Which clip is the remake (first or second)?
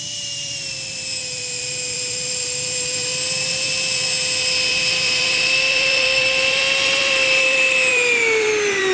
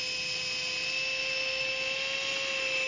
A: first